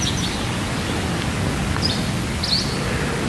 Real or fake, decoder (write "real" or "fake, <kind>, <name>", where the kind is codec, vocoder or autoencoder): real